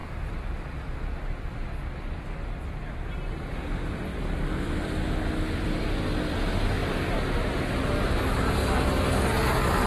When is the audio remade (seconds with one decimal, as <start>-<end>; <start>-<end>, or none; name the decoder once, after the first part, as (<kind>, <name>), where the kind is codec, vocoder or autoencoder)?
4.1-4.6 (vocoder, BigVGAN v2)